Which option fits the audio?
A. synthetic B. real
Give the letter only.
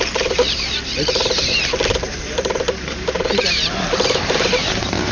A